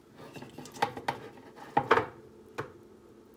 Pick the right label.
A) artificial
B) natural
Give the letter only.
B